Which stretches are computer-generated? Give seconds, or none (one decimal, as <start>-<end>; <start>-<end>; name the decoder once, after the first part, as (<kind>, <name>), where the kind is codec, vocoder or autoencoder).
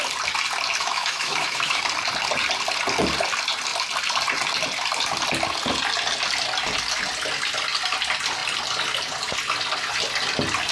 0.8-1.8 (autoencoder, DAC-VAE)